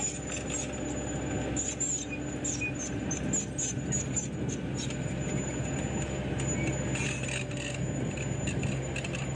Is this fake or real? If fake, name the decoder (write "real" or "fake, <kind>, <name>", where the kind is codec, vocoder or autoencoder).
real